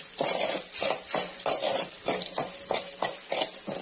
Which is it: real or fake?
real